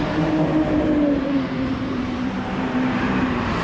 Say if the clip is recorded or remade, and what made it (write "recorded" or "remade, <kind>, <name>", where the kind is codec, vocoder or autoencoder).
remade, vocoder, BigVGAN v2